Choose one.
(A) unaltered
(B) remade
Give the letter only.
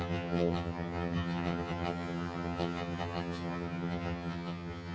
B